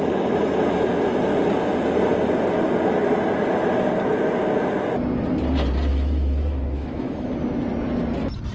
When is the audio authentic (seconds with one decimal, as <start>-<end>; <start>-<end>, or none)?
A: 0.0-5.9; 7.3-8.5